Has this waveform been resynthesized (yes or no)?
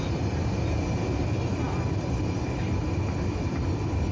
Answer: no